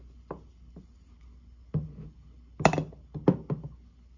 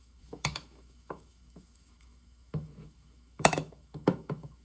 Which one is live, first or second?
first